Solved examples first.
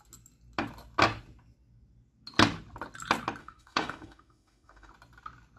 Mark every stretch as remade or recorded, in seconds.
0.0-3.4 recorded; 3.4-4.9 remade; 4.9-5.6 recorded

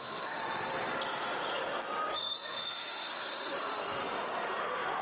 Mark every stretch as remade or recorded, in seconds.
0.0-0.4 remade; 0.4-2.1 recorded; 2.1-4.0 remade; 4.0-4.6 recorded; 4.6-5.0 remade

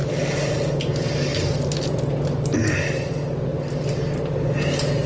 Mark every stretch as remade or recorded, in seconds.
0.0-5.1 recorded

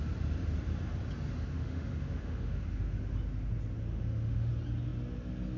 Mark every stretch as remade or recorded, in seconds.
0.0-1.5 recorded; 1.5-2.6 remade; 2.6-3.9 recorded; 3.9-4.5 remade; 4.5-5.6 recorded

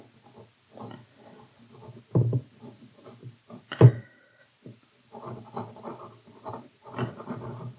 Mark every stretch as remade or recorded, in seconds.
0.0-7.8 recorded

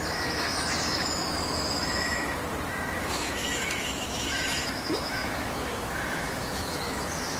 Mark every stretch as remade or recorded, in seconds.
0.0-2.4 remade; 2.4-3.0 recorded; 3.0-7.4 remade

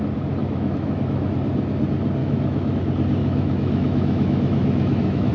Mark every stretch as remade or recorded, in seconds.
0.0-0.4 recorded; 0.4-1.3 remade; 1.3-2.2 recorded; 2.2-2.8 remade; 2.8-3.2 recorded; 3.2-5.3 remade

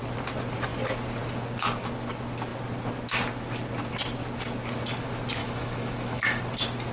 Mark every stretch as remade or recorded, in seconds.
0.0-5.4 recorded; 5.4-6.4 remade; 6.4-6.9 recorded